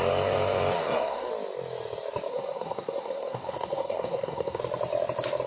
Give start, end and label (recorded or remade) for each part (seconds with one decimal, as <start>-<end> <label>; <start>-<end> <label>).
0.0-0.8 recorded; 0.8-1.3 remade; 1.3-2.3 recorded; 2.3-4.6 remade; 4.6-5.5 recorded